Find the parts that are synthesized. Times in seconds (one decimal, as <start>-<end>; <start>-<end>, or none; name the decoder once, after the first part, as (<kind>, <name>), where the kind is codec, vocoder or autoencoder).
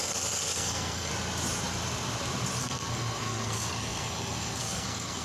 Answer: 0.0-1.1 (codec, SNAC); 2.6-5.2